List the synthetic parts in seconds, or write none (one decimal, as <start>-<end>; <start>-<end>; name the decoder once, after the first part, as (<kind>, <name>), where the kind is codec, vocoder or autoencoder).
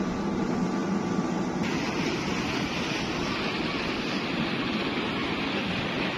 0.8-2.2 (vocoder, BigVGAN v2)